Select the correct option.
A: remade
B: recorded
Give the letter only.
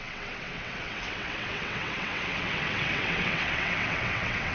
A